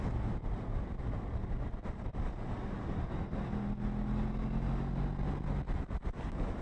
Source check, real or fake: real